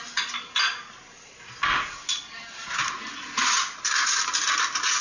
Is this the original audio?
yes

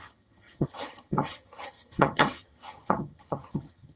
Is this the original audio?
no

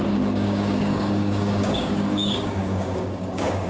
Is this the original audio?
no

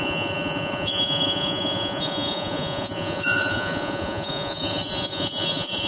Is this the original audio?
no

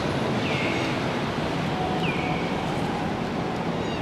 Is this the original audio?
yes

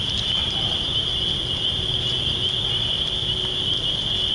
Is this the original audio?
yes